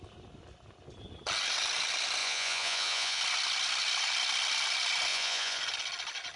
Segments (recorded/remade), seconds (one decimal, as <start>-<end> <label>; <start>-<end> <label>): 0.0-2.2 recorded; 2.2-3.2 remade; 3.2-5.1 recorded; 5.1-5.6 remade; 5.6-6.4 recorded